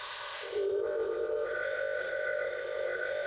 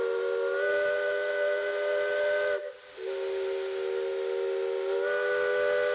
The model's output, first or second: first